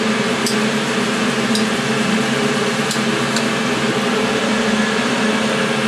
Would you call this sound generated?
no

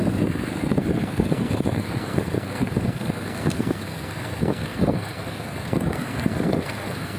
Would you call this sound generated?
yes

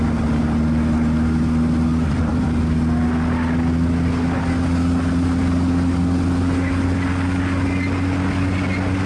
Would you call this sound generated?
no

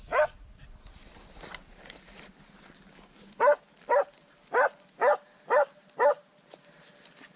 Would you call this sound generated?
no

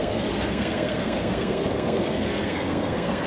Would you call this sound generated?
yes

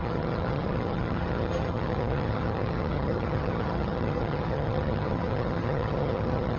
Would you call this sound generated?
yes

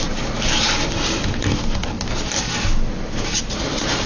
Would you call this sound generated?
no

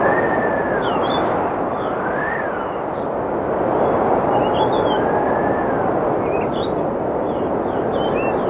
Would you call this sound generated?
no